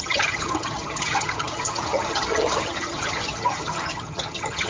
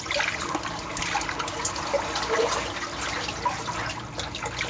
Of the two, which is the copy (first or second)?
first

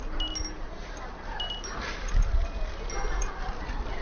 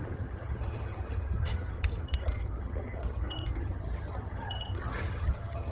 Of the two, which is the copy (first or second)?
second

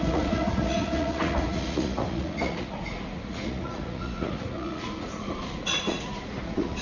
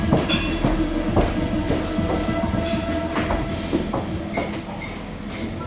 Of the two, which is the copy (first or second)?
first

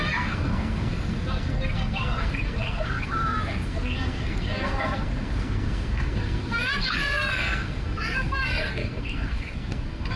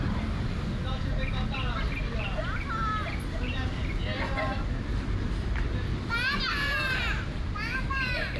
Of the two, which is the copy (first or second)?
first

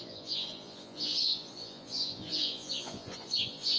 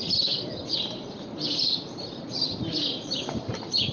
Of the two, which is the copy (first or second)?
first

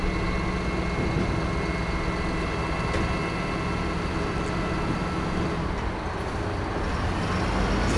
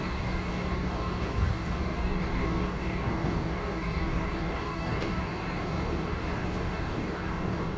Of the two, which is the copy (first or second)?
second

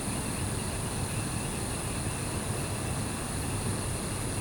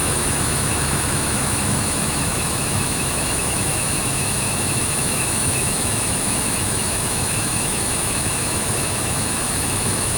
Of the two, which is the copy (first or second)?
second